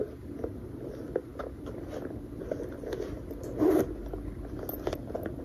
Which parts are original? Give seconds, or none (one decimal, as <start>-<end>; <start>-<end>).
0.0-5.4